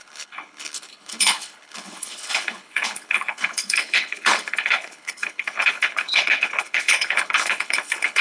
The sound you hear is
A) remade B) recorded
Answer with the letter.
A